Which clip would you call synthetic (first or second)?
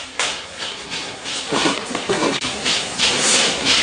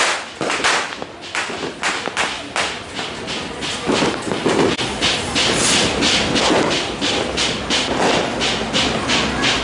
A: first